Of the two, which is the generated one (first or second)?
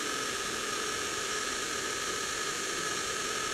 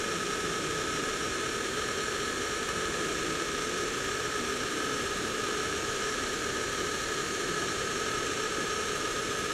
second